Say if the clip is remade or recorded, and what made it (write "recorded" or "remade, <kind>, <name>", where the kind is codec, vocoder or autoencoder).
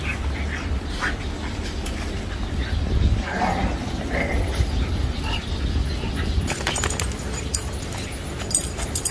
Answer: recorded